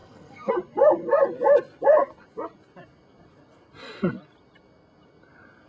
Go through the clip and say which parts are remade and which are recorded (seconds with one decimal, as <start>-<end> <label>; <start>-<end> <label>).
0.0-0.5 remade; 0.5-5.7 recorded